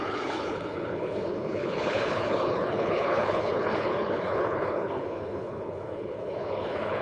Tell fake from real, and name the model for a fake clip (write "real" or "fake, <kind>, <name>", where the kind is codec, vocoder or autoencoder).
fake, codec, HILCodec